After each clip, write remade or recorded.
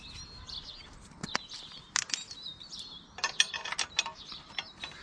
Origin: recorded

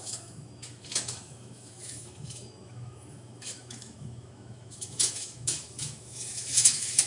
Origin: remade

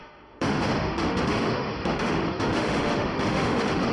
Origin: remade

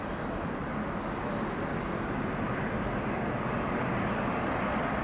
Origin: recorded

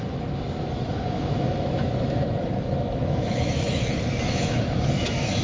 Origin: remade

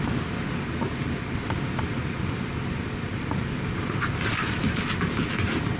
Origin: recorded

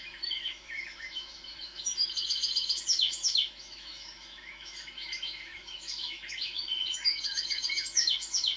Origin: remade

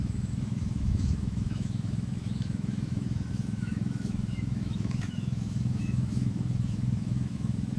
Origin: remade